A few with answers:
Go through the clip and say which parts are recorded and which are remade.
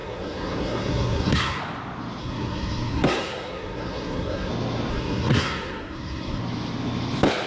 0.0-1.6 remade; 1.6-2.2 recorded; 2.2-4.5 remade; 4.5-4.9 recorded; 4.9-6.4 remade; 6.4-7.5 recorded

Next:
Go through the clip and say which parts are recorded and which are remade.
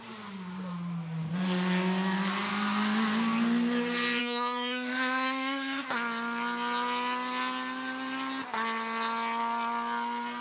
0.0-4.2 recorded; 4.2-5.9 remade; 5.9-10.4 recorded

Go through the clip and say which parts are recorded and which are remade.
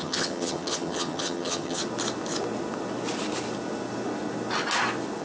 0.0-1.8 remade; 1.8-5.2 recorded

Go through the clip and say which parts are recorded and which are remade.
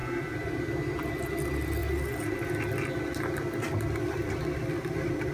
0.0-5.3 recorded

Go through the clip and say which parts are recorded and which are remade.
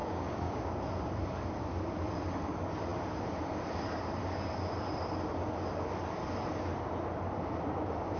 0.0-0.7 remade; 0.7-8.2 recorded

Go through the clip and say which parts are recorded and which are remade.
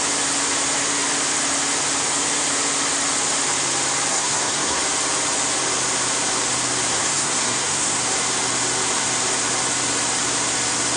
0.0-4.1 recorded; 4.1-4.8 remade; 4.8-6.9 recorded; 6.9-8.0 remade; 8.0-11.0 recorded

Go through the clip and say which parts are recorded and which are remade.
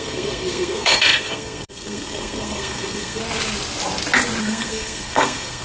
0.0-3.2 remade; 3.2-4.4 recorded; 4.4-5.6 remade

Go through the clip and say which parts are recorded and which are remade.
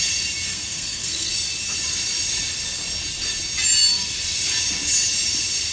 0.0-0.5 recorded; 0.5-1.3 remade; 1.3-5.7 recorded